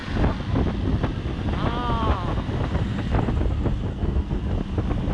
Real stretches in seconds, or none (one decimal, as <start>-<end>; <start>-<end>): 0.0-3.9; 4.4-5.1